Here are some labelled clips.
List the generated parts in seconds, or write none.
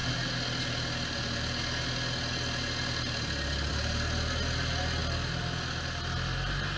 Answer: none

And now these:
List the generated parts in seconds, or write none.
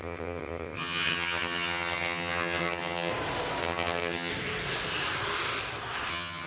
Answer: 0.0-3.1 (vocoder, HiFi-GAN); 3.6-4.3; 6.1-6.5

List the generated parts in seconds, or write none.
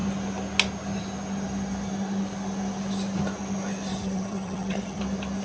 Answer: 3.9-5.0 (vocoder, HiFi-GAN)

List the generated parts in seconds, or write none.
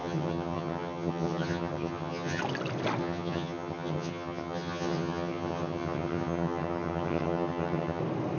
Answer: 0.0-2.4 (vocoder, HiFi-GAN); 3.0-8.0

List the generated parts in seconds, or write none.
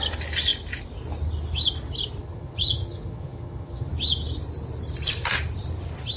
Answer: 2.2-3.9 (vocoder, HiFi-GAN)